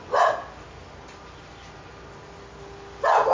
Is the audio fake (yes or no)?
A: no